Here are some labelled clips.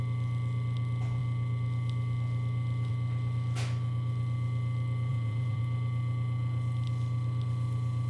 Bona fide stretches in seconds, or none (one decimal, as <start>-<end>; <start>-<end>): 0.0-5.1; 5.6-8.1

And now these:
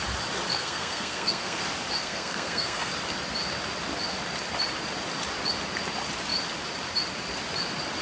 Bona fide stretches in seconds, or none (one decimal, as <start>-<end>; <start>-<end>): 0.0-0.5; 1.6-2.0; 2.9-8.0

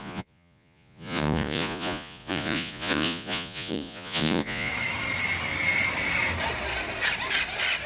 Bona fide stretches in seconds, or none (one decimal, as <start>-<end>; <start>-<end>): 4.7-7.9